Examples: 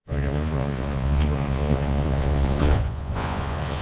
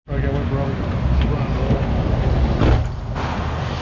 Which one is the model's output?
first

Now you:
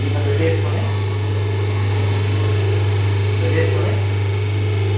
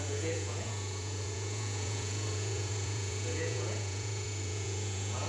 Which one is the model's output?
second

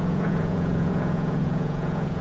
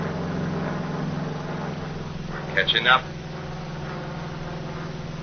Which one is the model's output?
first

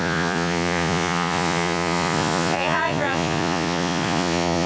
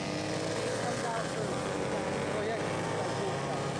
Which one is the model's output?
first